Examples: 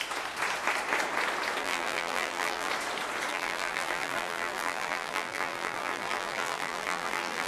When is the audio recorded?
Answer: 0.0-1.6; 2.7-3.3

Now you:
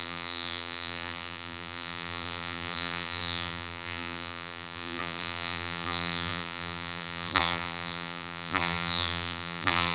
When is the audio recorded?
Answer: none

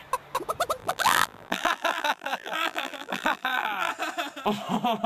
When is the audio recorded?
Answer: 0.0-0.8; 3.9-5.1

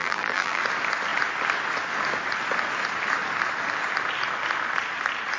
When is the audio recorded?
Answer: 0.6-5.4

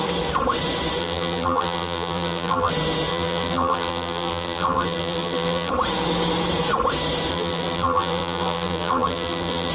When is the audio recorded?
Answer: 0.0-1.0; 2.7-3.1; 5.7-7.3